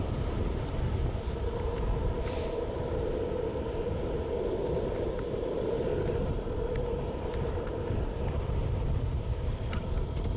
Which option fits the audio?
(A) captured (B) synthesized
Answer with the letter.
B